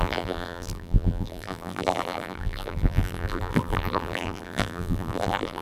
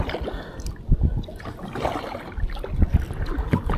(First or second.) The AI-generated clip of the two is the first